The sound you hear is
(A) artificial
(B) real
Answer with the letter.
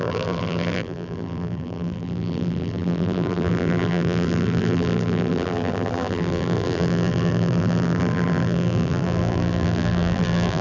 A